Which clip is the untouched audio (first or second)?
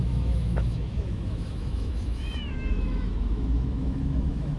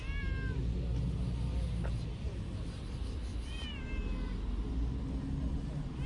second